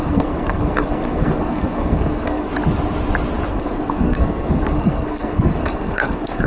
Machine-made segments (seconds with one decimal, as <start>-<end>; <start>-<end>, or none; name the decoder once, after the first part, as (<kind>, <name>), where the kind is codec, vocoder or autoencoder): 0.0-2.5 (codec, SNAC); 3.5-6.5